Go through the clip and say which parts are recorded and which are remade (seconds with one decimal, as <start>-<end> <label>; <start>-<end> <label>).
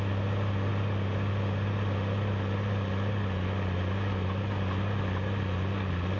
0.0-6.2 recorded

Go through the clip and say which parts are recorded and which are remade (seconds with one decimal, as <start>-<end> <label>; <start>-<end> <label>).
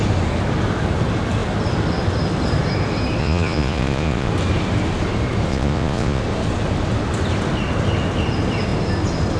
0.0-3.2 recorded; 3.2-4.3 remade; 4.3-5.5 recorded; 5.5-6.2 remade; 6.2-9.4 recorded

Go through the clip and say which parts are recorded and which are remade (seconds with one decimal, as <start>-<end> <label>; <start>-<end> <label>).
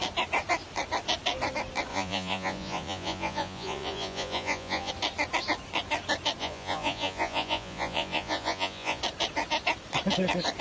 0.0-1.9 recorded; 1.9-4.9 remade; 4.9-6.4 recorded; 6.4-9.0 remade; 9.0-10.6 recorded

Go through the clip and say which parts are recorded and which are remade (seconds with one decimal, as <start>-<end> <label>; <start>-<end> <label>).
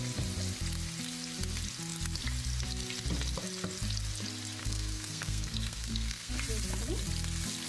0.0-4.6 recorded; 4.6-6.3 remade; 6.3-7.7 recorded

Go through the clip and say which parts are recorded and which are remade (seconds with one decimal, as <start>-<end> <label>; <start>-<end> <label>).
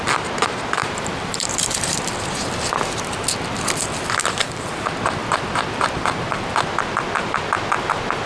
0.0-0.8 recorded; 0.8-1.9 remade; 1.9-4.2 recorded; 4.2-4.7 remade; 4.7-8.3 recorded